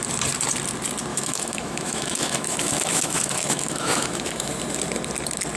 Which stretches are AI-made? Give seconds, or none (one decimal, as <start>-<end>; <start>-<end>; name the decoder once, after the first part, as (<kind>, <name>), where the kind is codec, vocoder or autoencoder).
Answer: 1.1-4.5 (autoencoder, DAC-VAE)